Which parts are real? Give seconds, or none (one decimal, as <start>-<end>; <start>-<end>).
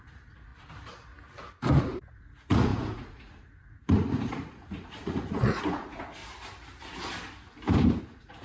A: 0.5-1.8; 6.2-8.0